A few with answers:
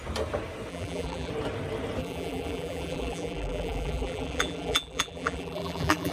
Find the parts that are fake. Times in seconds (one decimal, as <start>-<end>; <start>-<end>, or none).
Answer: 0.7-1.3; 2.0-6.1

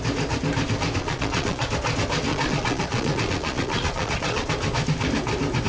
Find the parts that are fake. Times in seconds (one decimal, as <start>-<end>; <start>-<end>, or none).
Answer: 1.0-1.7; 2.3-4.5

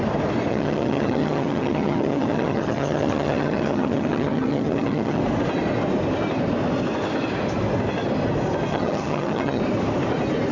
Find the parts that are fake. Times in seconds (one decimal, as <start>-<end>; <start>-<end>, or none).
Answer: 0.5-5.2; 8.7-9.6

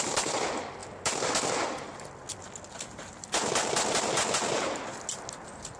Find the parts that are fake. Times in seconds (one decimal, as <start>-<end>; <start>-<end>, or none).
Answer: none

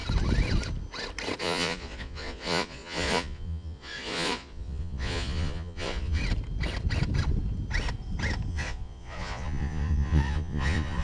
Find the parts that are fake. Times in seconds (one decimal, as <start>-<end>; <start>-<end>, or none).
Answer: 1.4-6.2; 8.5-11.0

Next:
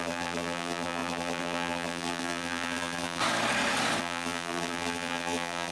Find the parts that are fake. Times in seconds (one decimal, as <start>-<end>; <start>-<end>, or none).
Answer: 0.0-3.2; 4.0-5.7

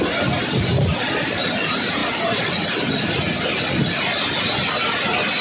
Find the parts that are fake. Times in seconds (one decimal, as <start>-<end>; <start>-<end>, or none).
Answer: none

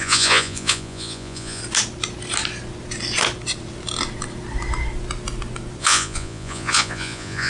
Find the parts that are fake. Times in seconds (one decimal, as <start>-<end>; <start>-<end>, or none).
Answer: 0.0-1.6; 5.8-7.5